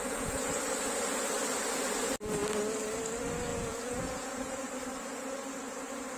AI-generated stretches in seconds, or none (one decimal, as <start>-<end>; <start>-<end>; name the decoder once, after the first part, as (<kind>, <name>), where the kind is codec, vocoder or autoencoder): 0.0-0.6 (vocoder, Vocos); 3.5-4.7